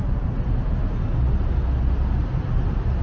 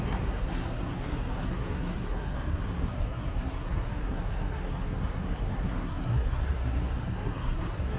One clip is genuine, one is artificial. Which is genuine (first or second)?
first